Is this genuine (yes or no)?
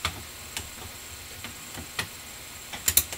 yes